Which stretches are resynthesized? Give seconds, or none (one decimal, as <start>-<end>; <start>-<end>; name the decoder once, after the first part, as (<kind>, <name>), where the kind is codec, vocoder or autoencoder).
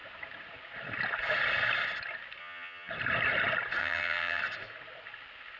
2.4-2.9 (vocoder, HiFi-GAN); 3.8-4.4